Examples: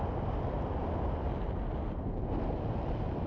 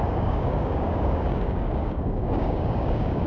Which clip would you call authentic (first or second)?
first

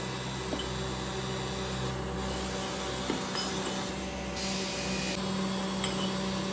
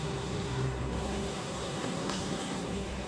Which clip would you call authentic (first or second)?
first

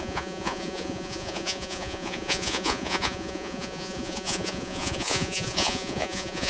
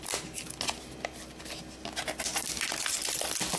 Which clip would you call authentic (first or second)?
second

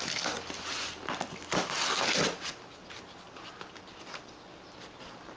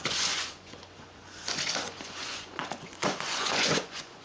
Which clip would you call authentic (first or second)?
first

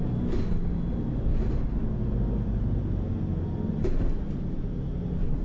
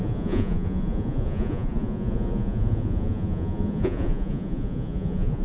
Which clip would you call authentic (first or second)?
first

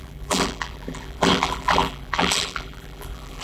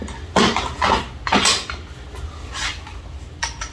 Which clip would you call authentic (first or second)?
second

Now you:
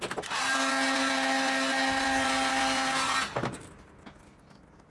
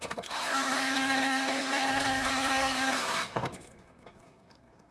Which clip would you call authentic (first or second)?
first